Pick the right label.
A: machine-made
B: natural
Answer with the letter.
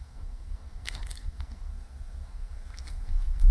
A